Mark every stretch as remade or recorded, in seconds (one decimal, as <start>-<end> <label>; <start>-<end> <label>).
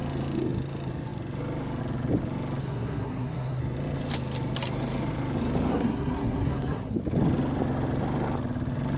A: 0.0-2.6 recorded; 2.6-3.6 remade; 3.6-5.7 recorded; 5.7-7.0 remade; 7.0-9.0 recorded